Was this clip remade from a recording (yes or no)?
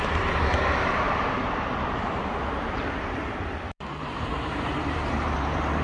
yes